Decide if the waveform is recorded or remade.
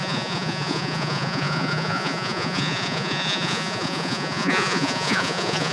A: remade